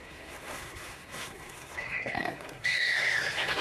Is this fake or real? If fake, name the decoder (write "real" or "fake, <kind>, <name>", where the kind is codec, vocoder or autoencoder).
fake, codec, SNAC